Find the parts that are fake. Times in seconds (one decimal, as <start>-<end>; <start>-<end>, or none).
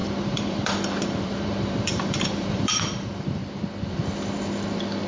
0.0-3.4